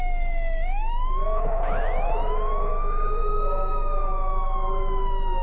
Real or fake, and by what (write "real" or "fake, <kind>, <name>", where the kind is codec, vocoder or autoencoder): fake, autoencoder, DAC-VAE